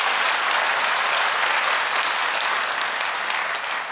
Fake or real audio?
real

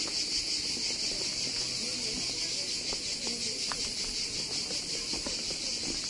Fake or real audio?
real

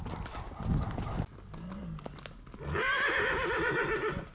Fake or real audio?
real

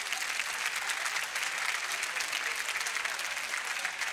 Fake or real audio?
real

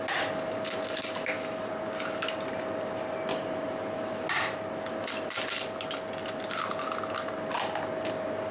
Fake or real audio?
real